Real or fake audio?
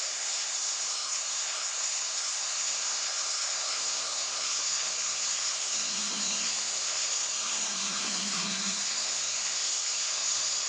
fake